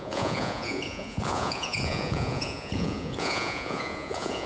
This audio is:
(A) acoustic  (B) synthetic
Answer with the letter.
B